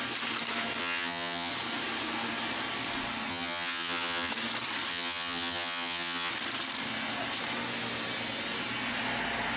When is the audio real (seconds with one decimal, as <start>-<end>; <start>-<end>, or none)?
0.0-0.8; 1.5-3.3; 4.3-4.9; 6.3-9.6